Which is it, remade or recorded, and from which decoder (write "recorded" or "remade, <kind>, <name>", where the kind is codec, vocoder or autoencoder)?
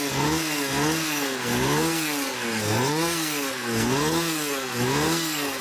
remade, codec, SNAC